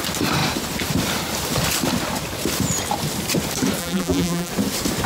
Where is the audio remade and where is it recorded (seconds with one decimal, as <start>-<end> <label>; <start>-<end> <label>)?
0.0-3.8 recorded; 3.8-4.5 remade; 4.5-5.1 recorded